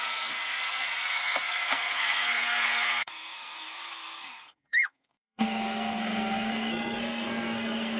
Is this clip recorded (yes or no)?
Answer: no